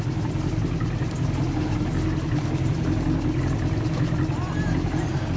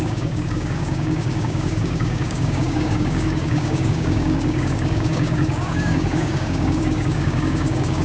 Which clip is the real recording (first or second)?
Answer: first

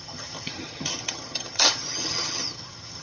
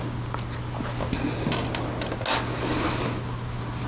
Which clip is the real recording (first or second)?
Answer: second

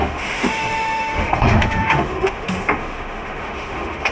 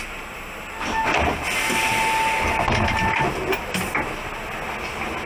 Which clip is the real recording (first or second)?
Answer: second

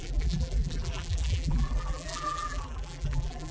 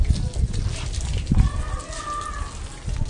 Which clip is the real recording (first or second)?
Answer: second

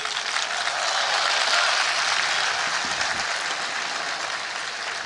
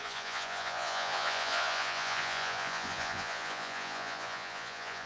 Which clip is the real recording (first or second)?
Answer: first